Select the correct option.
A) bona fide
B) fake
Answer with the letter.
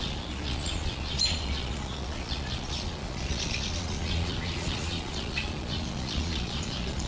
B